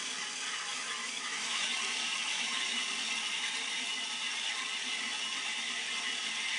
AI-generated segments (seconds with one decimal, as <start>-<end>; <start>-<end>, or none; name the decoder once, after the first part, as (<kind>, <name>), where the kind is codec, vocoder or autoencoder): 0.7-1.6 (autoencoder, DAC-VAE); 2.2-2.8